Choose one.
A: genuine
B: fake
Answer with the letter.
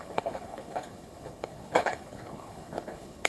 B